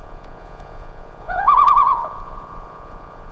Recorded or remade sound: remade